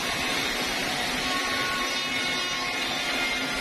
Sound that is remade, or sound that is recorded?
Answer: recorded